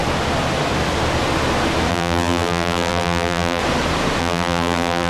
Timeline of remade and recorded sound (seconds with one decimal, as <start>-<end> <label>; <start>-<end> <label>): 0.0-1.9 recorded; 1.9-3.6 remade; 3.6-4.2 recorded; 4.2-5.1 remade